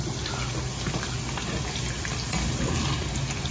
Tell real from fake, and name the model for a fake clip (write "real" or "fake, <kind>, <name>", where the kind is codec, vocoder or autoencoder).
real